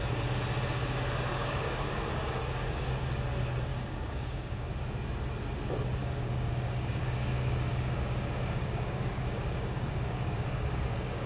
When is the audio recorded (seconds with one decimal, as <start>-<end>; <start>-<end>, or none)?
0.0-1.3; 2.0-2.4; 3.0-3.7; 4.7-6.0